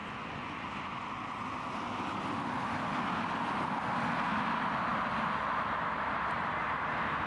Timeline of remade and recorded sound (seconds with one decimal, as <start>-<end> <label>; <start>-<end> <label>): 0.0-0.6 remade; 0.6-7.3 recorded

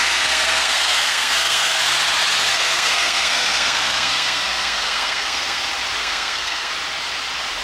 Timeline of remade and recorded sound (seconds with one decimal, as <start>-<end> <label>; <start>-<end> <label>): 0.0-1.8 remade; 1.8-2.5 recorded; 2.5-5.6 remade; 5.6-6.0 recorded; 6.0-6.7 remade; 6.7-7.6 recorded